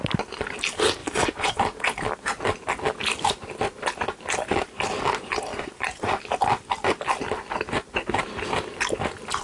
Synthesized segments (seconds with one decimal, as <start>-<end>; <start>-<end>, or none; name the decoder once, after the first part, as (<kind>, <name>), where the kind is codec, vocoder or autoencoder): 1.0-1.6 (vocoder, Vocos); 5.5-6.2